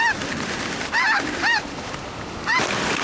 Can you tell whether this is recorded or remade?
remade